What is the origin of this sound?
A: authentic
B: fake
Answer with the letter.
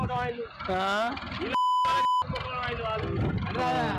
A